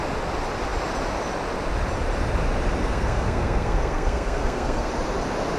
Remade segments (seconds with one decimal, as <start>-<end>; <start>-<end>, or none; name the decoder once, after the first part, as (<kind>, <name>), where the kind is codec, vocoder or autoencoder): 2.8-4.9 (codec, SNAC)